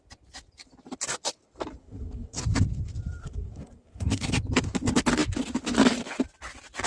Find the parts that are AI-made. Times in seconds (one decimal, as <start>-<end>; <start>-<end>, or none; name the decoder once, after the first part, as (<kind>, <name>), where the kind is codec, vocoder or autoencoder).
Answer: 1.8-2.4 (codec, SNAC); 3.2-4.3